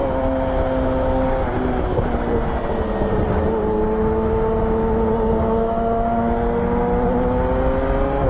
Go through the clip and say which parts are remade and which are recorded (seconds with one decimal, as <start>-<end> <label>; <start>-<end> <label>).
0.0-8.3 recorded